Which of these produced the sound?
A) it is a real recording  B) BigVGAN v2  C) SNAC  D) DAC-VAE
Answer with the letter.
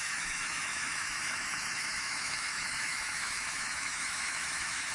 D